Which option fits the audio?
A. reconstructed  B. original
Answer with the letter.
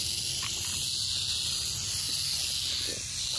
B